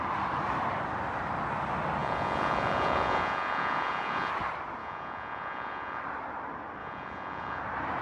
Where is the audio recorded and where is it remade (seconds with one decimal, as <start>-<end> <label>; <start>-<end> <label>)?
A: 0.0-2.0 recorded; 2.0-4.3 remade; 4.3-4.8 recorded; 4.8-6.0 remade; 6.0-6.8 recorded; 6.8-7.6 remade; 7.6-8.0 recorded